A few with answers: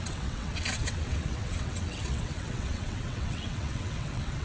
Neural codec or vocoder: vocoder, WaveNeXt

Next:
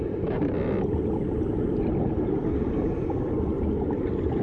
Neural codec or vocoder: none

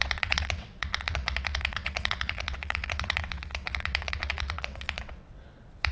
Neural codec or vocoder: vocoder, WaveNeXt